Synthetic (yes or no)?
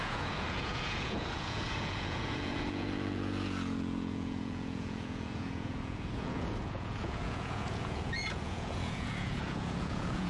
yes